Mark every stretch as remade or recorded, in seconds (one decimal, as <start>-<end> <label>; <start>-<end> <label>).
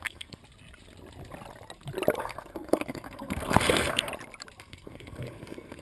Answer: 0.0-0.4 remade; 0.4-2.2 recorded; 2.2-4.1 remade; 4.1-4.6 recorded; 4.6-5.8 remade